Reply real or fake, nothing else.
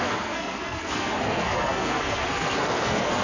fake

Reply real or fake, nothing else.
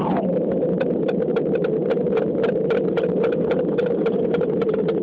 real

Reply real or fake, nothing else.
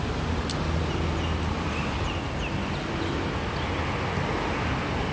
real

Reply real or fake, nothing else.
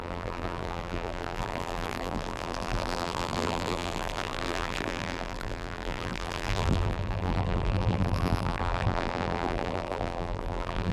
fake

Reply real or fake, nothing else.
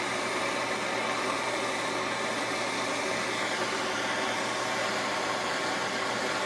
real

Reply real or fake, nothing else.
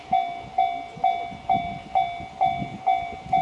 real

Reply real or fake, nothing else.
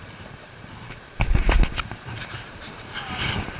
fake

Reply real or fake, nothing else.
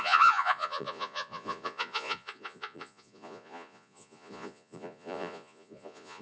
fake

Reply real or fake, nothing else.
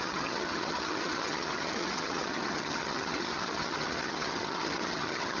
fake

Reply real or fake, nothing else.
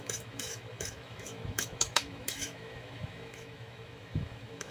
fake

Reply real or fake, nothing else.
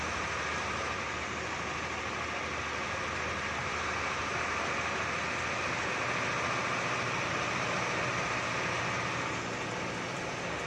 real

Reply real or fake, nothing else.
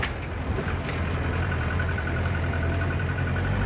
fake